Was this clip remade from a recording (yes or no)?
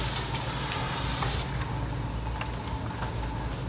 no